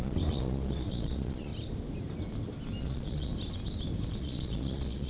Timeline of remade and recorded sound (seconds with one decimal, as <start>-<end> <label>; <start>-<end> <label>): 0.0-1.5 remade; 1.5-2.8 recorded; 2.8-3.3 remade; 3.3-4.2 recorded; 4.2-5.1 remade